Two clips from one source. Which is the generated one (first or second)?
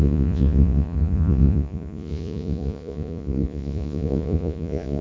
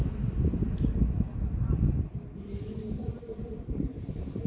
first